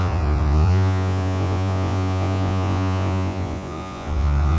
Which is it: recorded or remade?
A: remade